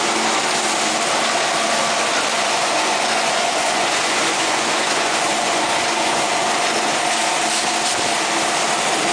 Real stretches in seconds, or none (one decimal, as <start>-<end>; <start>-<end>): 0.0-2.3; 7.0-9.1